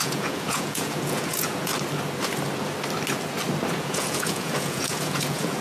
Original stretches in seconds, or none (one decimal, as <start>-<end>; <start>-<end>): 1.7-3.8